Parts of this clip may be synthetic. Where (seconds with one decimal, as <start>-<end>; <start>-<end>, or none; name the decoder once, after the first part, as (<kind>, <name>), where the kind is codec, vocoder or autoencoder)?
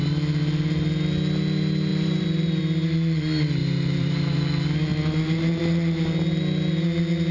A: 1.9-2.6 (vocoder, BigVGAN v2); 3.6-4.4